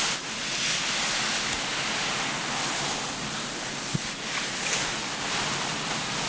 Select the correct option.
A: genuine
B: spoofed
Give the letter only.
A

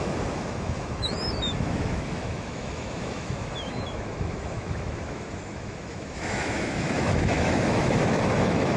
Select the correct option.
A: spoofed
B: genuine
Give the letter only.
A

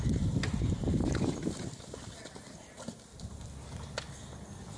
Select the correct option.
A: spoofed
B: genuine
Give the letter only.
B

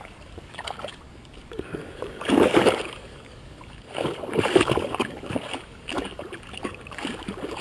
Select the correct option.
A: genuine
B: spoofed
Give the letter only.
B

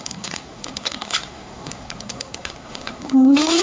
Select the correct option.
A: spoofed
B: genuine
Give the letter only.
A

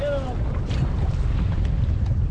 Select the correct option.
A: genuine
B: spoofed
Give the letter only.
A